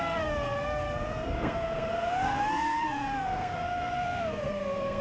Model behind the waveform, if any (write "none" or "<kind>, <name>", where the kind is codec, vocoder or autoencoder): codec, SNAC